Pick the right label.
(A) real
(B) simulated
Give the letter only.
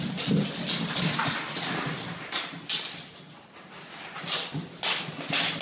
A